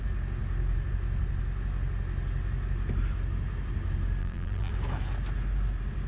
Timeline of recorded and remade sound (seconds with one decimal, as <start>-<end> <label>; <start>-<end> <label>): 0.0-4.2 recorded; 4.2-4.7 remade; 4.7-6.1 recorded